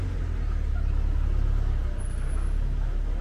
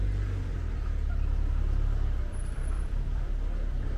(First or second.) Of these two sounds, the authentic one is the first